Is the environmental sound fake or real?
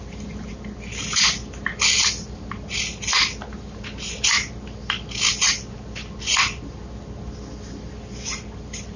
real